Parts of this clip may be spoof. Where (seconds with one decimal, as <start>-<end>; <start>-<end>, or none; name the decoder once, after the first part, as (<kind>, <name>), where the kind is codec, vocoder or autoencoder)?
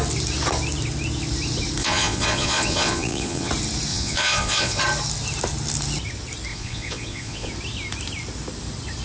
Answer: 1.8-3.5 (vocoder, Vocos); 3.9-4.8; 6.5-7.5